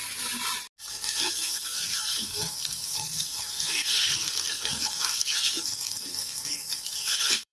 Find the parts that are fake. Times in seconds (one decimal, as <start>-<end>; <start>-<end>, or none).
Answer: 0.9-7.5